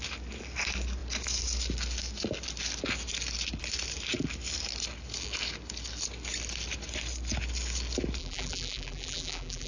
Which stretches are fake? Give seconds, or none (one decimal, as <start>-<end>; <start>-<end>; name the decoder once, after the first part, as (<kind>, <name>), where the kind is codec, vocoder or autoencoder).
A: 8.2-9.7 (vocoder, BigVGAN v2)